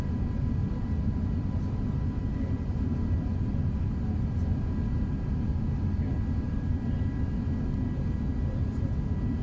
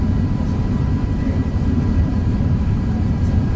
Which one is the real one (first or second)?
first